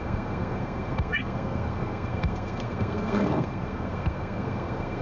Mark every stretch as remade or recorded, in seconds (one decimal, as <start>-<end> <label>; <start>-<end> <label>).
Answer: 0.0-5.0 remade